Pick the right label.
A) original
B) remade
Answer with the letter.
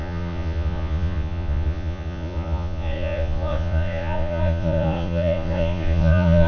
B